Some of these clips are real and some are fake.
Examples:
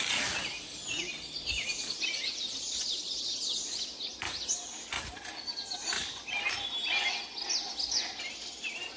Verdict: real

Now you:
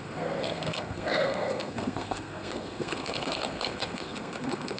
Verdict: fake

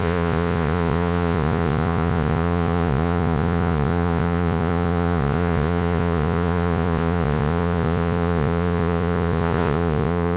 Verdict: fake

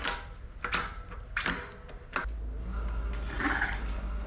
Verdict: real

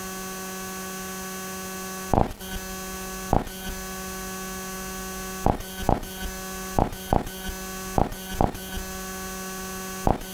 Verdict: real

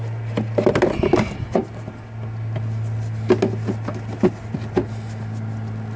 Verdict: real